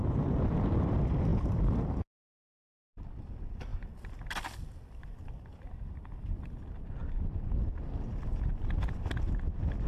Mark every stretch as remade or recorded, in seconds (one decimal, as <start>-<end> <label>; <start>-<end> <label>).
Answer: 0.0-9.9 recorded